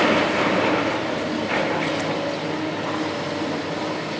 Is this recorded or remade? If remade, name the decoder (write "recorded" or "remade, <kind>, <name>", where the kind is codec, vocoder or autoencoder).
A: recorded